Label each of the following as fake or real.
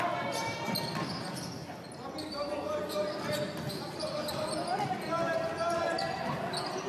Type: real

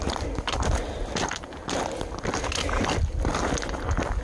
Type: real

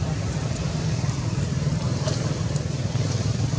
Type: fake